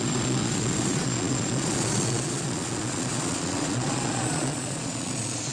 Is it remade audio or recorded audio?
remade